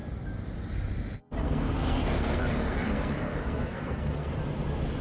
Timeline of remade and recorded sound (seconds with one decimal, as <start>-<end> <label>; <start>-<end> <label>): 0.0-1.4 recorded; 1.4-4.3 remade; 4.3-5.0 recorded